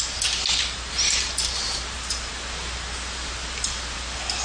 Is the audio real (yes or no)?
yes